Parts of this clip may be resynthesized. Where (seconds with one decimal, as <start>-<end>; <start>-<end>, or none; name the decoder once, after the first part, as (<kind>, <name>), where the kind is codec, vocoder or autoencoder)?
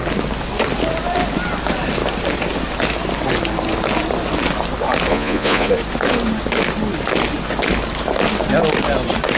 5.1-5.7 (vocoder, Vocos)